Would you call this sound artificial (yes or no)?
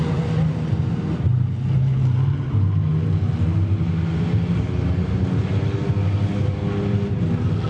no